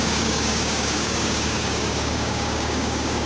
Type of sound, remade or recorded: remade